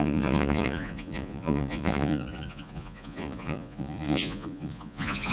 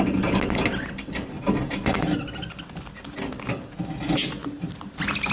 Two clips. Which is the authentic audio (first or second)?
second